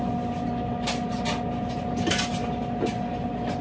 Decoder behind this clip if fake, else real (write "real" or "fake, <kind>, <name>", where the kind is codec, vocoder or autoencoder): real